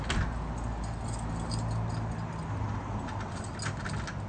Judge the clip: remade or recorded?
recorded